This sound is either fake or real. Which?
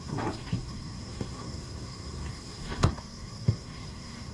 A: fake